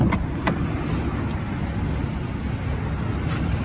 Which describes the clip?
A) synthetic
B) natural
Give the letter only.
B